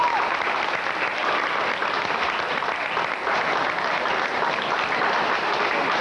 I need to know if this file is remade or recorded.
recorded